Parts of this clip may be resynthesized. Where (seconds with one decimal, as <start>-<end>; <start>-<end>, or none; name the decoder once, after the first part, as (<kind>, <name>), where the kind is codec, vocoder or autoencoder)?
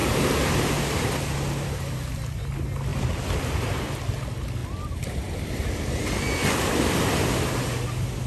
0.0-0.6 (vocoder, BigVGAN v2); 2.9-4.0; 4.6-5.9